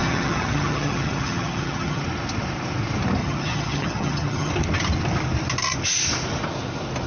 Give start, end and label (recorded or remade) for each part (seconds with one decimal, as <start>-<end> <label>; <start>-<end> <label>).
0.0-2.0 remade; 2.0-3.2 recorded; 3.2-4.5 remade; 4.5-7.1 recorded